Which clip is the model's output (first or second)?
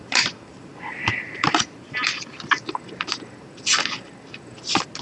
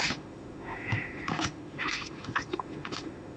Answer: second